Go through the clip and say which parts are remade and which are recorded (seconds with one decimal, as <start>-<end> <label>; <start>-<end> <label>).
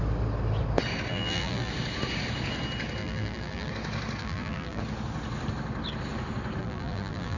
0.0-1.1 recorded; 1.1-1.7 remade; 1.7-3.0 recorded; 3.0-3.7 remade; 3.7-4.2 recorded; 4.2-4.8 remade; 4.8-6.6 recorded; 6.6-7.4 remade